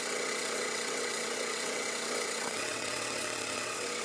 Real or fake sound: fake